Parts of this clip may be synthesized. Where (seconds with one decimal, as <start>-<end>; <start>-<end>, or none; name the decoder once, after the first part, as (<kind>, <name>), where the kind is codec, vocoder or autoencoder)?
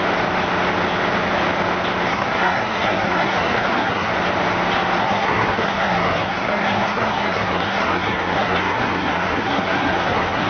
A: 2.1-4.1 (codec, SNAC); 5.0-10.5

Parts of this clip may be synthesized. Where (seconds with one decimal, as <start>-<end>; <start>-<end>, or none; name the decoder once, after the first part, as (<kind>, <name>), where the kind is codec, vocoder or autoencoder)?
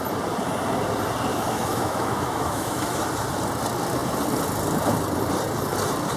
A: 1.3-3.0 (autoencoder, DAC-VAE)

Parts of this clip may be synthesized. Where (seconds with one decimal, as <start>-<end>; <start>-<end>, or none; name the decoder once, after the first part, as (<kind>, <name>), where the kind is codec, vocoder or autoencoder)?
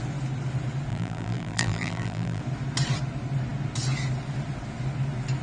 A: 0.9-2.4 (vocoder, BigVGAN v2)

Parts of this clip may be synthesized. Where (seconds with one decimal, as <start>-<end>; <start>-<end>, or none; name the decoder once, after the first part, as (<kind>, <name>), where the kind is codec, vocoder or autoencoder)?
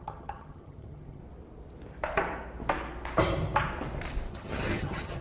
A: 0.0-1.2 (vocoder, HiFi-GAN); 4.3-5.2